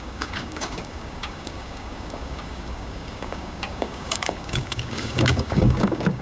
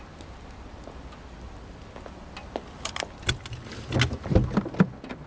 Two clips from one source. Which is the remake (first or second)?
first